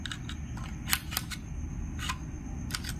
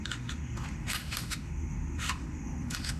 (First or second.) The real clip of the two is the first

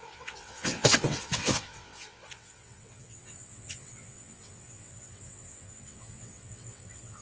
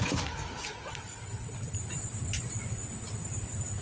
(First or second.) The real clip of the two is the second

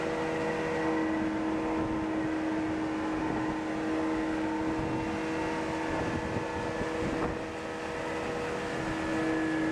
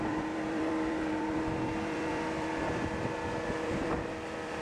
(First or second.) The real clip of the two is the first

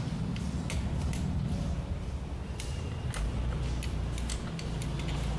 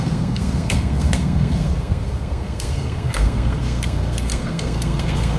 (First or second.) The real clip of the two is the first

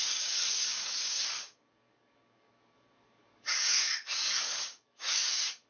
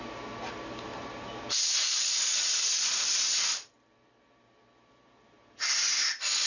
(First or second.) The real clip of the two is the second